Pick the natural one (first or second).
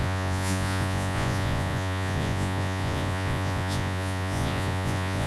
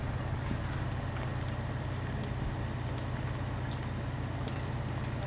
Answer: second